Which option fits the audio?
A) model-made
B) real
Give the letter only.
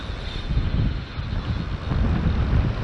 B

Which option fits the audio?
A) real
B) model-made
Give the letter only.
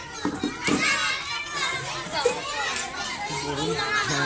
A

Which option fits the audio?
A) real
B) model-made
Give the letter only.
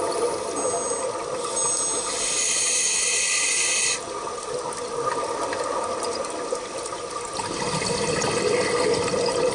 A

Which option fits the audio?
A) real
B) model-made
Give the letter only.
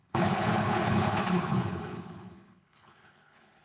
B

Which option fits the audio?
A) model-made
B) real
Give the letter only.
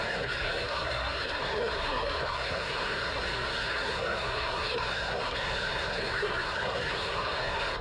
A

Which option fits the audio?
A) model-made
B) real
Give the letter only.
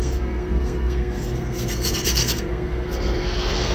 A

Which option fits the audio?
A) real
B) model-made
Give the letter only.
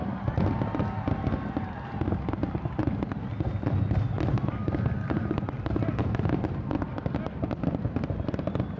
A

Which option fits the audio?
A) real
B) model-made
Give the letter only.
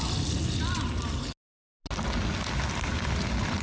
A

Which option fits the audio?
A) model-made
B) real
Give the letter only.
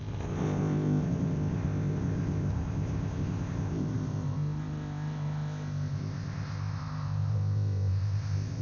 A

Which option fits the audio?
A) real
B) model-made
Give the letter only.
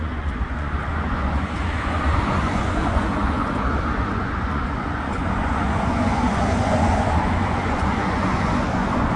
B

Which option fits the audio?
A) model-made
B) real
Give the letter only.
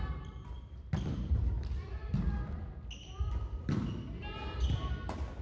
B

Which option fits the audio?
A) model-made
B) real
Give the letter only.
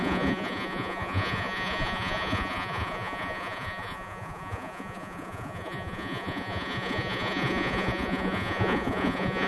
A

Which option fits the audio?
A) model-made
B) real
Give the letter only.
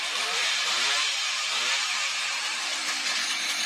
A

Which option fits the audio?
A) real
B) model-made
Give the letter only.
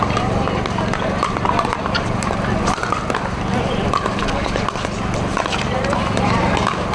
B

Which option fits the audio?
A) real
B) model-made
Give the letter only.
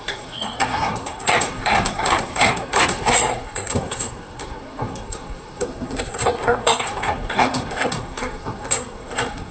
B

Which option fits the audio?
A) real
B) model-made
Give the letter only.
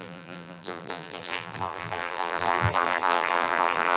B